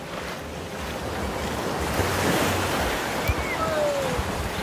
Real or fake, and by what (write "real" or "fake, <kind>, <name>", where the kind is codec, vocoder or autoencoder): real